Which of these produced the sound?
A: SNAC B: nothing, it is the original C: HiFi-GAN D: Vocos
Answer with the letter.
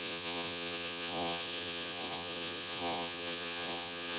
D